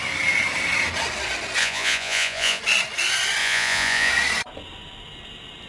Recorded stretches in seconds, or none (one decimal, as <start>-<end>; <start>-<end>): 0.0-1.6; 2.6-3.4; 4.1-5.7